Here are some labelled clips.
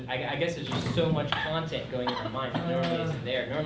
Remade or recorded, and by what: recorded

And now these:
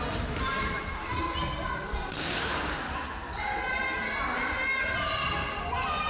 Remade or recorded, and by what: recorded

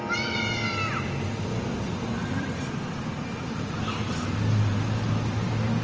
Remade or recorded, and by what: recorded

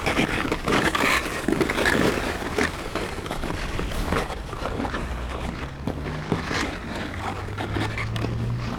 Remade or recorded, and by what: remade, codec, DAC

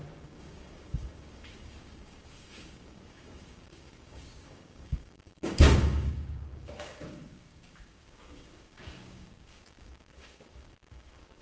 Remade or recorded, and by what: remade, codec, DAC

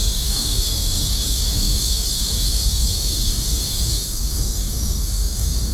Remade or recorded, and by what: remade, codec, DAC